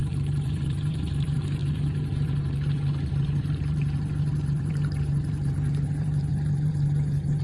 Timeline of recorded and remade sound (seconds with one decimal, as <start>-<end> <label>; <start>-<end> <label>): 0.0-7.4 remade